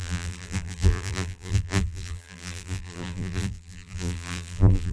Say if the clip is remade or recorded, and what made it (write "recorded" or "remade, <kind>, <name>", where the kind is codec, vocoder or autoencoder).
remade, vocoder, BigVGAN v2